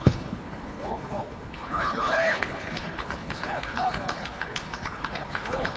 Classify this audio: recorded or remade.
remade